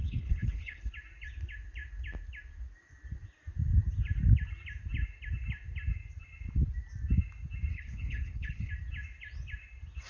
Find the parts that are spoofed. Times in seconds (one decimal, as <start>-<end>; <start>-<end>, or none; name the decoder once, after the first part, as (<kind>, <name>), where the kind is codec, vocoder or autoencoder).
0.0-0.9 (codec, HILCodec); 7.7-8.7